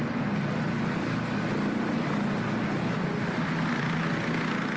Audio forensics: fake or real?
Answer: real